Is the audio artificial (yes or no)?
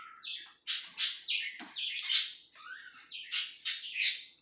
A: no